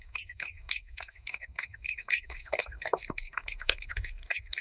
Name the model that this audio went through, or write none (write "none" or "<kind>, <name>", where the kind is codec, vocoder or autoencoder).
codec, DAC